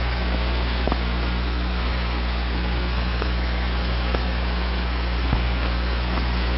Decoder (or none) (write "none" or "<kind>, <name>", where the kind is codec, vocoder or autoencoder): codec, SNAC